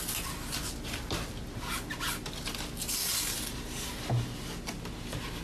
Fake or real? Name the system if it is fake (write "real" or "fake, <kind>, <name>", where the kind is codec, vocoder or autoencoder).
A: real